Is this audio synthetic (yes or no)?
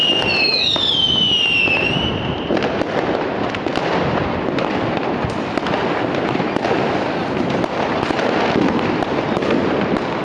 no